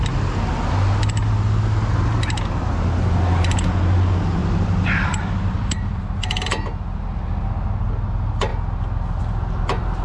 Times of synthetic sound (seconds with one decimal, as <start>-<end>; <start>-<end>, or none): 4.4-6.0

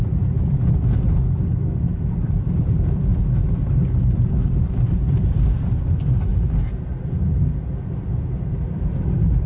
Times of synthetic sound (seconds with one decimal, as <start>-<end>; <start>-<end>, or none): 0.0-3.1; 4.6-6.3; 7.1-9.5